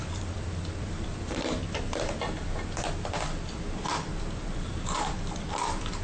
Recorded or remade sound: remade